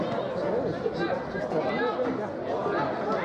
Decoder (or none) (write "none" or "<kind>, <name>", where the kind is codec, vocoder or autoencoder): none